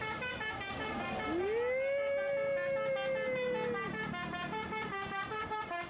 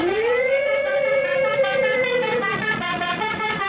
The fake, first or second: second